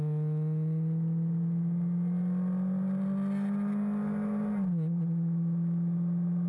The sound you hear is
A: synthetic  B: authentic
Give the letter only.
B